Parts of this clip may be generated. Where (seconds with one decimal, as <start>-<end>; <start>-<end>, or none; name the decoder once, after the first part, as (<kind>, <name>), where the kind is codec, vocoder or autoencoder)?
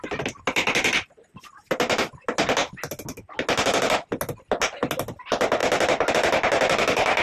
none